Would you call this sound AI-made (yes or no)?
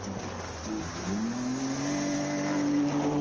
no